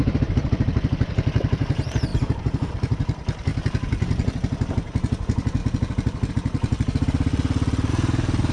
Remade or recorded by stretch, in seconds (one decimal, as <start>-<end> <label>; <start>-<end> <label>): 0.0-3.5 remade; 3.5-4.7 recorded; 4.7-5.6 remade; 5.6-6.3 recorded; 6.3-7.3 remade; 7.3-7.9 recorded; 7.9-8.5 remade

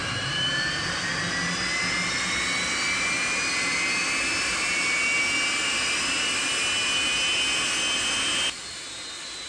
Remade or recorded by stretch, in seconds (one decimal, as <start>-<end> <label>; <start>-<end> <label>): 0.0-1.1 remade; 1.1-9.5 recorded